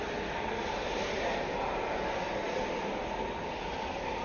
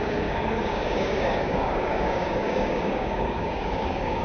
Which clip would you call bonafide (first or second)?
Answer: first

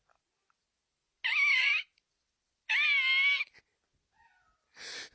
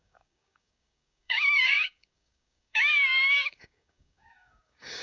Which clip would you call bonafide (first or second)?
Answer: first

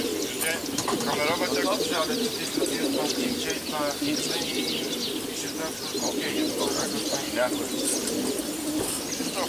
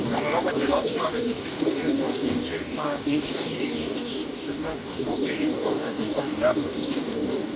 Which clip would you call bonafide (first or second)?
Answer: first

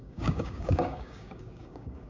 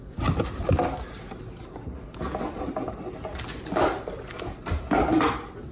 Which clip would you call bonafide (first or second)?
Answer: second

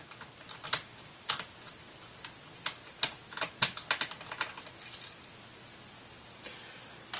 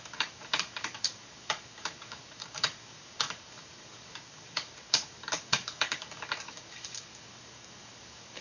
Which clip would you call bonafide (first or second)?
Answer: first